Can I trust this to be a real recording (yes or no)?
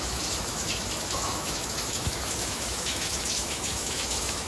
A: no